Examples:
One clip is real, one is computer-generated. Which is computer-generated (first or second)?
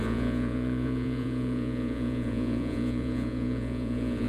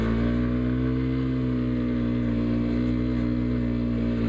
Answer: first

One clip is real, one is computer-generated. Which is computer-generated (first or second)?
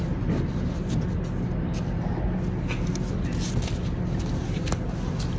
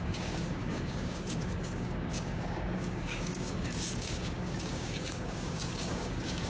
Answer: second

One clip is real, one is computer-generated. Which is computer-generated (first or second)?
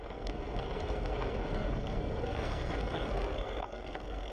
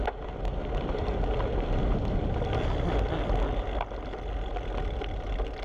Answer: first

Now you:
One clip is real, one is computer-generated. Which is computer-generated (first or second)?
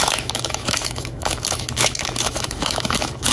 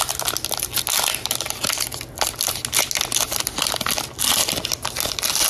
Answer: first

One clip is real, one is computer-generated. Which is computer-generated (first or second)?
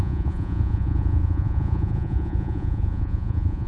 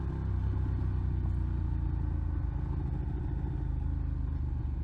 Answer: first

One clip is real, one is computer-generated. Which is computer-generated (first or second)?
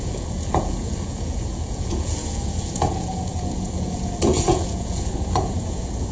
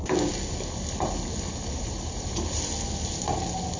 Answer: first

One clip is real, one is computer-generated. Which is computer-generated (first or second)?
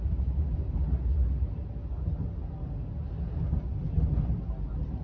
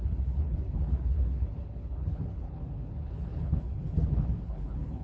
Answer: second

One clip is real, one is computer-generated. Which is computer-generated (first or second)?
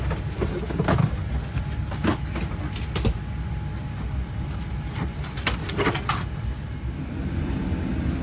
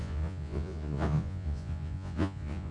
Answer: second